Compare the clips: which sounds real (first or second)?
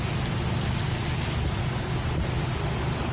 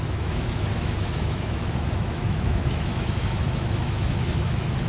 first